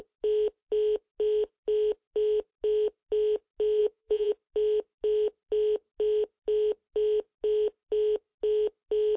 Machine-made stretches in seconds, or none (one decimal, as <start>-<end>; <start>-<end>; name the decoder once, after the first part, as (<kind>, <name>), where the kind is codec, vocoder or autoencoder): 3.8-4.3 (vocoder, Vocos)